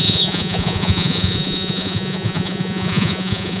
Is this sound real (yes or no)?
no